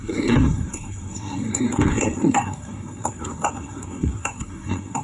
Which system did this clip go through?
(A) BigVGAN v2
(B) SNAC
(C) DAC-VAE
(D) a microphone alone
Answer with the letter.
B